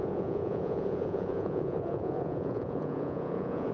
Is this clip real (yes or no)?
no